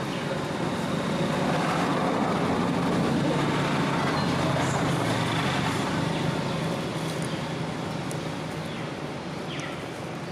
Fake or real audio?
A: real